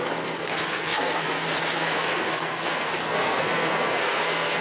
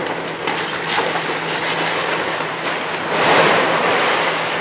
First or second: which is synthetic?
first